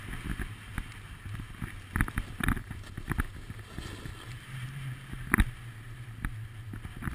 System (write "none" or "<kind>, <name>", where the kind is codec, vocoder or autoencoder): none